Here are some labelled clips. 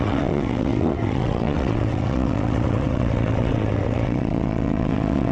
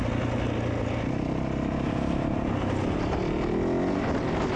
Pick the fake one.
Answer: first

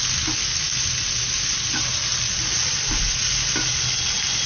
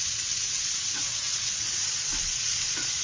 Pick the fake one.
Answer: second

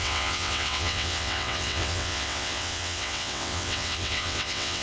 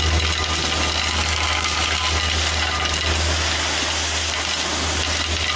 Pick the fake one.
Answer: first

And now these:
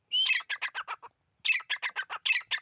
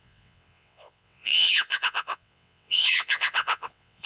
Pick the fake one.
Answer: second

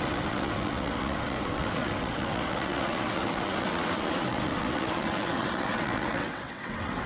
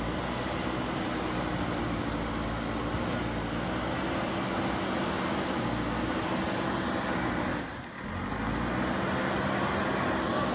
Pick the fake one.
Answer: first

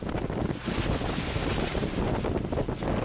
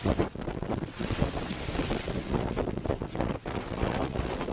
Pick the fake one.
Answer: second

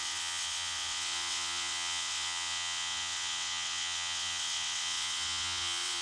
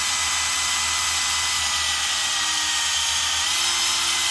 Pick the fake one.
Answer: first